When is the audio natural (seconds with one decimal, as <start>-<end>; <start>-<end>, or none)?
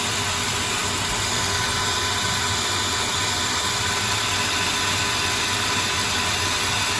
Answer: 0.0-7.0